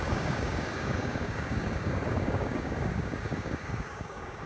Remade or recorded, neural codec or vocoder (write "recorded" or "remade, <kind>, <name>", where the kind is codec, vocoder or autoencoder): remade, codec, DAC